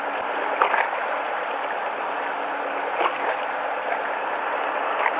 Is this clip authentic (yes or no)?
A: yes